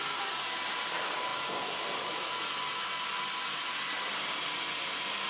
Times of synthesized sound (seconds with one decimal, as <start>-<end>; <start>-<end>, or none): none